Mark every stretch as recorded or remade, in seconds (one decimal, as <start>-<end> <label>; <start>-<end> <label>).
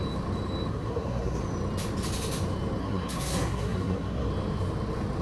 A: 0.0-0.7 recorded; 0.7-1.4 remade; 1.4-2.8 recorded; 2.8-4.3 remade; 4.3-5.2 recorded